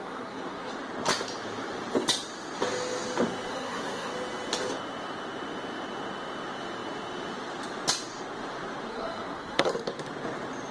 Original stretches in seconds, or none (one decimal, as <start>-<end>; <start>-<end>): 0.7-3.5; 4.1-8.9; 9.7-10.7